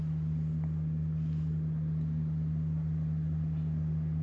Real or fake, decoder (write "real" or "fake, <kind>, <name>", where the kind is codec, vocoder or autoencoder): real